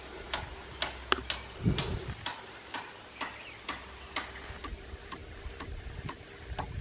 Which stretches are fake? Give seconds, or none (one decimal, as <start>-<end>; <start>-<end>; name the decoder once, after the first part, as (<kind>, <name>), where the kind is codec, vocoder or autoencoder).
none